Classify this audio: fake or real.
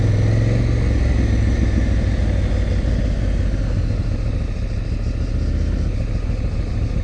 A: real